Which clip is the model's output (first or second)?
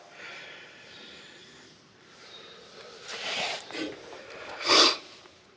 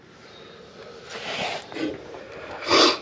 first